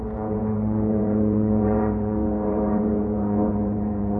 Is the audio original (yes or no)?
no